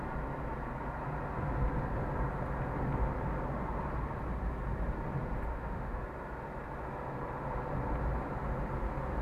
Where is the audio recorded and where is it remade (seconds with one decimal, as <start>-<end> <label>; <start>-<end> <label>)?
0.0-5.5 recorded; 5.5-6.0 remade; 6.0-9.2 recorded